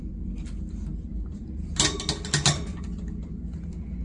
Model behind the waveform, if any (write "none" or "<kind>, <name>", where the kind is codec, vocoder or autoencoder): none